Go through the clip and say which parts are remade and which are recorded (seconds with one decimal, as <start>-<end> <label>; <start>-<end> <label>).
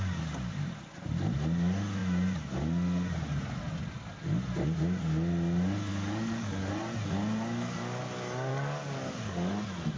0.0-5.9 recorded; 5.9-6.7 remade; 6.7-8.5 recorded; 8.5-9.5 remade; 9.5-10.0 recorded